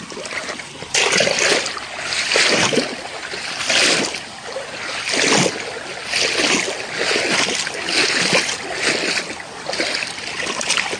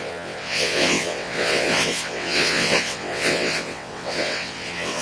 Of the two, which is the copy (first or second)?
second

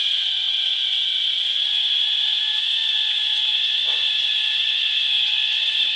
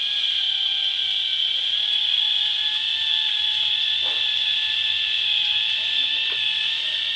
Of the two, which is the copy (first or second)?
first